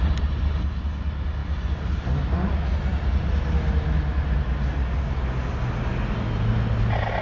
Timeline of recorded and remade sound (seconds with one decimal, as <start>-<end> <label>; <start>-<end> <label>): 0.0-7.2 recorded